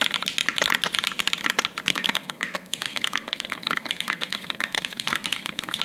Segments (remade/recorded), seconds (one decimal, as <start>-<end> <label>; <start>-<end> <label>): 0.0-1.9 recorded; 1.9-5.8 remade